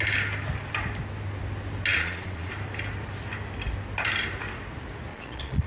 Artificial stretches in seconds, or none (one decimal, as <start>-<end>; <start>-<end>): 1.9-2.5; 5.1-5.7